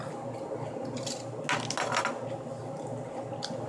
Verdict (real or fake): real